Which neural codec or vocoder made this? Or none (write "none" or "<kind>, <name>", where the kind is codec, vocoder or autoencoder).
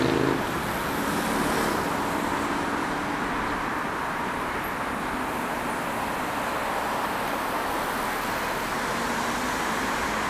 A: none